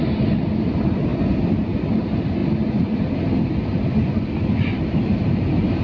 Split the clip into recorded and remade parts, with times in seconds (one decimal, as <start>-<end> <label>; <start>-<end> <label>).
0.0-5.8 recorded